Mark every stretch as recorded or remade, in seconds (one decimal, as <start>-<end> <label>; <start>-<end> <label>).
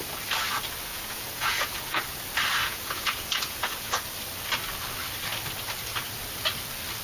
0.0-0.9 recorded; 0.9-2.0 remade; 2.0-2.6 recorded; 2.6-4.0 remade; 4.0-7.0 recorded